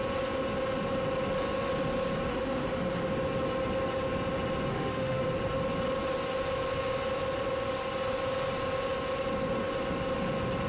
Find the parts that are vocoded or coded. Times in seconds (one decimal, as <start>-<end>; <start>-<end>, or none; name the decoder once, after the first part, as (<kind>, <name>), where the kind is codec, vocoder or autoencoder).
2.3-3.1 (autoencoder, DAC-VAE); 4.7-5.2